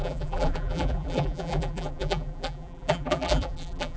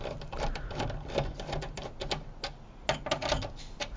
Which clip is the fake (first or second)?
first